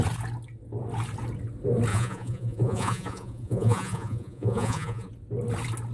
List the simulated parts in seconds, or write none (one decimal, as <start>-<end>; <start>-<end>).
1.9-5.1